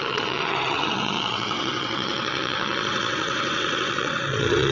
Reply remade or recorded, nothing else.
remade